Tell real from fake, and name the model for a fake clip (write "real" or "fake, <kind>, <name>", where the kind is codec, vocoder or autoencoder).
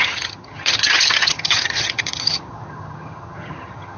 fake, vocoder, HiFi-GAN